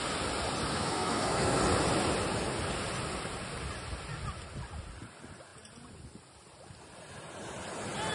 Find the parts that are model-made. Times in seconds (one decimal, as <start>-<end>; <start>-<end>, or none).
0.7-1.6

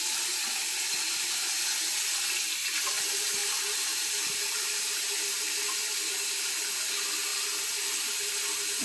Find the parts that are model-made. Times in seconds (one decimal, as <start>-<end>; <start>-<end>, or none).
3.4-6.5

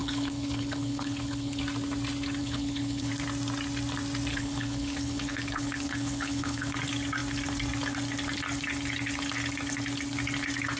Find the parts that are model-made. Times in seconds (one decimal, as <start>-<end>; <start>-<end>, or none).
0.0-1.6; 2.4-3.1; 4.3-6.8

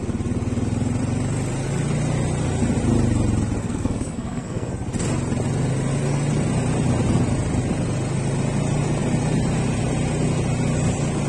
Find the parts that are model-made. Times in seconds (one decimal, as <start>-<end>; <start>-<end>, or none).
3.6-4.7